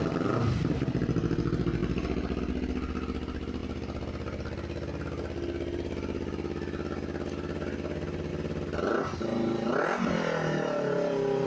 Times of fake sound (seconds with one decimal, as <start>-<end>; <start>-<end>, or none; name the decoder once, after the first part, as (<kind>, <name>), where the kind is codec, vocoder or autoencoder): 1.8-2.4 (vocoder, BigVGAN v2)